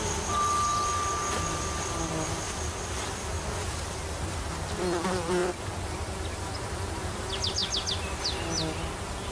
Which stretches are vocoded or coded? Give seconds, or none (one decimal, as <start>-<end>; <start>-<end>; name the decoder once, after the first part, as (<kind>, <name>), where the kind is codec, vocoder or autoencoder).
none